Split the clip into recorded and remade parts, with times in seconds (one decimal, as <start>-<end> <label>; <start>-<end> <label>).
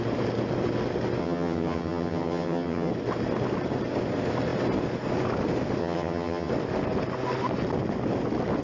0.0-1.2 recorded; 1.2-2.9 remade; 2.9-5.8 recorded; 5.8-6.5 remade; 6.5-8.6 recorded